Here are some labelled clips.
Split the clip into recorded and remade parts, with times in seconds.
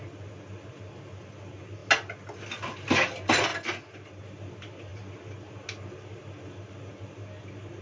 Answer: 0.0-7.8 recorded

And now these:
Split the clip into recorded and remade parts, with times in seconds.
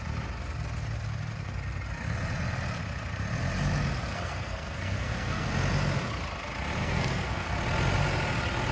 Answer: 0.0-4.1 recorded; 4.1-5.5 remade; 5.5-6.8 recorded; 6.8-7.5 remade; 7.5-8.7 recorded